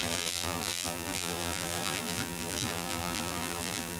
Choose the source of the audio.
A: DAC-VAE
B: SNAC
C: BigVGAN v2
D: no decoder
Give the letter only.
C